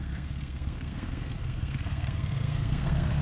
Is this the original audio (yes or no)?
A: no